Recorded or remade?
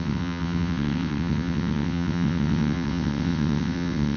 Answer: remade